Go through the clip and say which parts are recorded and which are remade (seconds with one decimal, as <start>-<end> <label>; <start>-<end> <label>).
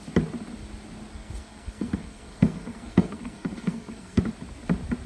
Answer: 0.0-1.1 recorded; 1.1-4.2 remade; 4.2-5.1 recorded